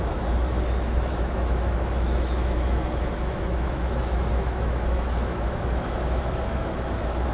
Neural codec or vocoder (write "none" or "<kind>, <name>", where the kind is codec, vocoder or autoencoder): autoencoder, DAC-VAE